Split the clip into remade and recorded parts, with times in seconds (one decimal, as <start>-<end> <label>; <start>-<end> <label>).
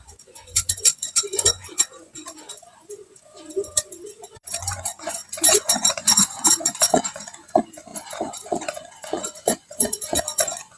0.0-10.8 remade